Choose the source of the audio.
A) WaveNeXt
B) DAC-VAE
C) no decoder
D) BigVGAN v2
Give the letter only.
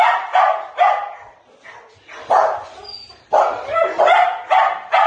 C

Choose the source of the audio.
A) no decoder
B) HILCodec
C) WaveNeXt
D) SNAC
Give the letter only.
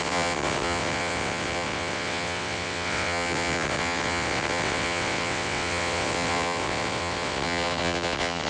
C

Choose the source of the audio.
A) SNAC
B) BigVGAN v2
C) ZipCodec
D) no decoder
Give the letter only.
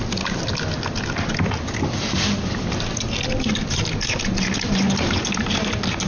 D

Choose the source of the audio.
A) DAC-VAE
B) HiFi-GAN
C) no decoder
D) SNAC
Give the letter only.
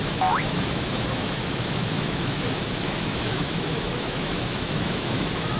A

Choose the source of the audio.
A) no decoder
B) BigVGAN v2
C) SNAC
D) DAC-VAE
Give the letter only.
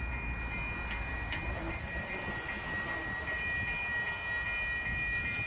A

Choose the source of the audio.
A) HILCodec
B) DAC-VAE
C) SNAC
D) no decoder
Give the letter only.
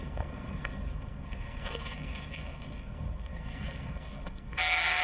C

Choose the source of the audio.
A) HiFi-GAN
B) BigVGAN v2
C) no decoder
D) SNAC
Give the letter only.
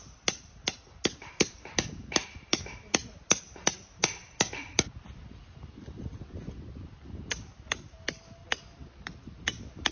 B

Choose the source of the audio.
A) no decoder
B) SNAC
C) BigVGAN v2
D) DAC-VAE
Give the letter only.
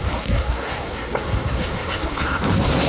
B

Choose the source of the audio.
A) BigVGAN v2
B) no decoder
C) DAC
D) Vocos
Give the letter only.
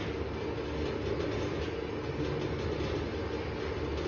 B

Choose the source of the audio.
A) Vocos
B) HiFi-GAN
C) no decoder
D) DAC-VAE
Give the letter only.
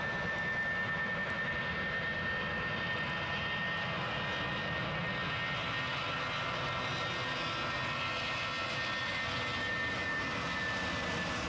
C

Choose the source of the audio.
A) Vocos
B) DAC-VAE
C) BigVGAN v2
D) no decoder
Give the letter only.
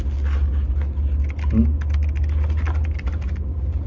D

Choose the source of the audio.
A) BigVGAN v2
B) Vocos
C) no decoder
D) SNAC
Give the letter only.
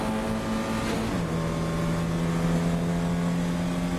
C